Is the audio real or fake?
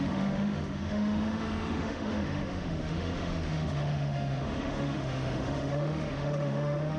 fake